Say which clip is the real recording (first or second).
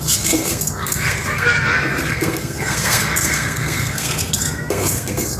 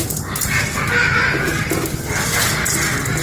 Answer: second